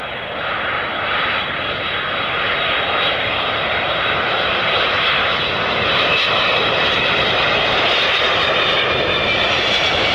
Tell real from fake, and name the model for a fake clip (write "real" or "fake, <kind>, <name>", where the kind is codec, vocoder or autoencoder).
fake, vocoder, BigVGAN v2